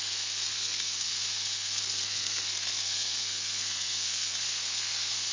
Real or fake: fake